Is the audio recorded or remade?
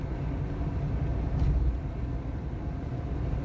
recorded